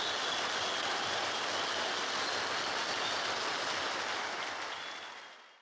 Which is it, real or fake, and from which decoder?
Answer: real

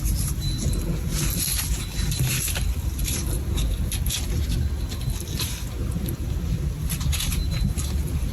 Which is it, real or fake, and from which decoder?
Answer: real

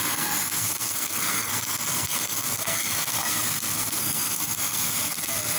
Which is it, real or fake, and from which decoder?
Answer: fake, codec, SNAC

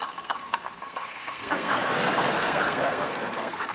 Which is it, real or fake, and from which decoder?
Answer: fake, codec, SNAC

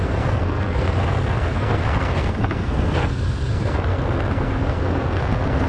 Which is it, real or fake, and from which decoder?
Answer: fake, codec, SNAC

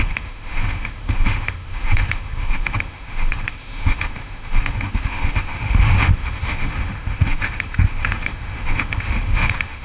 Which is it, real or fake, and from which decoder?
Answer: fake, autoencoder, DAC-VAE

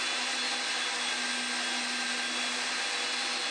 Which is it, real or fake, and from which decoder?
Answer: real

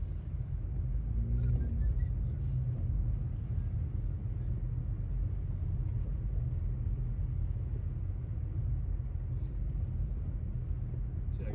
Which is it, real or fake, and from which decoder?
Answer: real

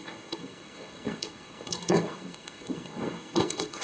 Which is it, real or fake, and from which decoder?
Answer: fake, codec, SNAC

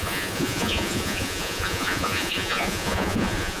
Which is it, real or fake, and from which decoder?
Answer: fake, vocoder, Vocos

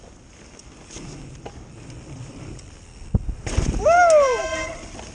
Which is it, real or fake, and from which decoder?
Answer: real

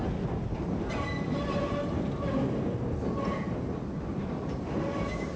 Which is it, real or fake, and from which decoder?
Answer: real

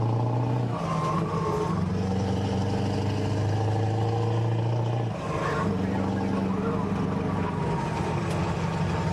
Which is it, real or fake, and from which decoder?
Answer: real